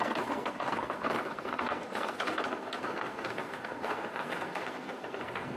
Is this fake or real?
fake